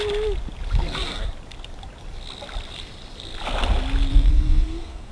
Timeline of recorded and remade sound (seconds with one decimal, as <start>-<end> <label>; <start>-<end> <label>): 0.0-4.1 recorded; 4.1-5.1 remade